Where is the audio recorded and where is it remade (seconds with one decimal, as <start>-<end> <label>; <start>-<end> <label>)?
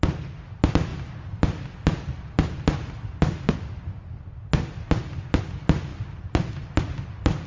0.0-7.5 recorded